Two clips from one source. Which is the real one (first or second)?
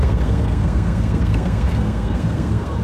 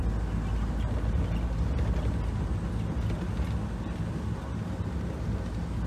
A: second